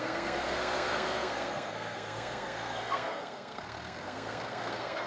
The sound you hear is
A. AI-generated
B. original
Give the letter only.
A